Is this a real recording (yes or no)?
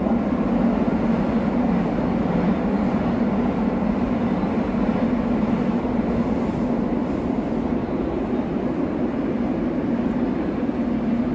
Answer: yes